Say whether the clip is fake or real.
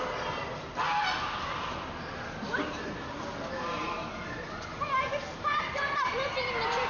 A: real